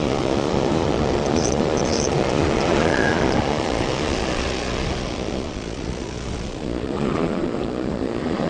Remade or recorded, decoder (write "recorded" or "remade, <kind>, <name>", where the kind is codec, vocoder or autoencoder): remade, vocoder, Vocos